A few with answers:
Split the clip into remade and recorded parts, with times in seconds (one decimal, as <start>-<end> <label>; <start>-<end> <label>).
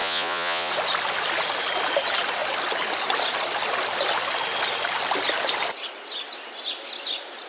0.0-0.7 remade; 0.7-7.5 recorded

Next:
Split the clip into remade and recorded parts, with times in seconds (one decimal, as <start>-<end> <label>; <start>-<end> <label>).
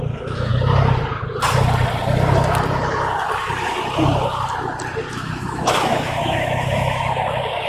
0.0-0.5 remade; 0.5-5.1 recorded; 5.1-7.7 remade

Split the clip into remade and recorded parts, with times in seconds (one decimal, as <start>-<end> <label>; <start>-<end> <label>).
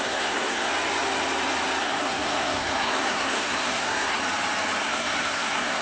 0.0-0.7 remade; 0.7-1.8 recorded; 1.8-4.2 remade; 4.2-4.8 recorded; 4.8-5.8 remade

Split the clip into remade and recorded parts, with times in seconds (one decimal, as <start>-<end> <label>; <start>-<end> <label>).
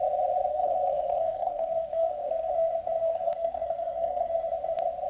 0.0-0.5 recorded; 0.5-2.5 remade; 2.5-3.0 recorded; 3.0-4.3 remade; 4.3-5.1 recorded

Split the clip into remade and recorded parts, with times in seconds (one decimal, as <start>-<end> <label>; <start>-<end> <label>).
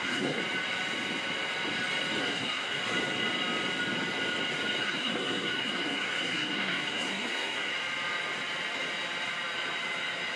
0.0-0.4 remade; 0.4-2.2 recorded; 2.2-2.8 remade; 2.8-4.8 recorded; 4.8-7.7 remade; 7.7-10.4 recorded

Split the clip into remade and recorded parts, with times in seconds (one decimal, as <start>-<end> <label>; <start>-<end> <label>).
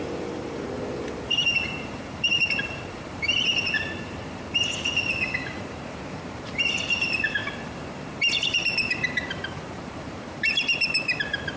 0.0-11.6 remade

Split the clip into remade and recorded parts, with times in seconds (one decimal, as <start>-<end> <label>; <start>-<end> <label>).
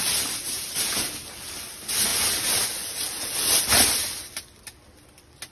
0.0-5.5 recorded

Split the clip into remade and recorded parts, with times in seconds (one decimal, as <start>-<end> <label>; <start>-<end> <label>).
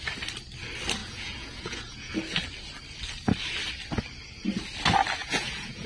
0.0-1.0 recorded; 1.0-2.1 remade; 2.1-5.2 recorded; 5.2-5.9 remade